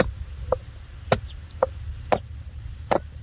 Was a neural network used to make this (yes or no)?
no